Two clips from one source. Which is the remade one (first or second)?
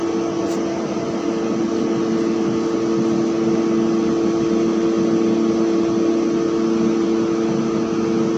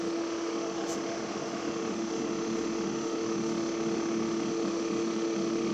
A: second